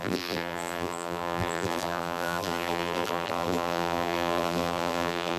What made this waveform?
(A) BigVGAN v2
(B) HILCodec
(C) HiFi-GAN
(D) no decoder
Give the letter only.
A